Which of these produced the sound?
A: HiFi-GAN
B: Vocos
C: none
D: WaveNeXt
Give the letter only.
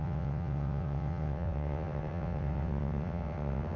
D